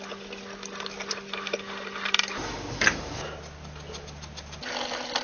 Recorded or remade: recorded